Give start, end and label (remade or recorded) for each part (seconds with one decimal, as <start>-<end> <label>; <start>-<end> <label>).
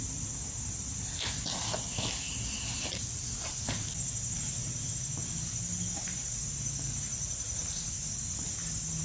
0.0-9.0 recorded